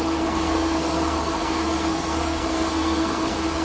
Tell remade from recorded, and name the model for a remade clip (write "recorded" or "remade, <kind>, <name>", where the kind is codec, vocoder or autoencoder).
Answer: remade, codec, SNAC